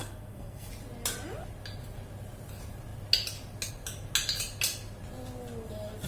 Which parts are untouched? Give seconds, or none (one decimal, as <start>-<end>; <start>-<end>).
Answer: 0.7-6.1